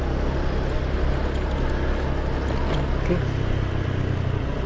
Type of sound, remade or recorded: recorded